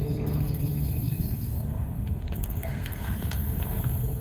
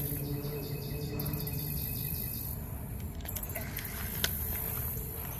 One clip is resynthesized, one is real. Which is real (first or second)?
second